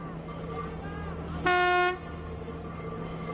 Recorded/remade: recorded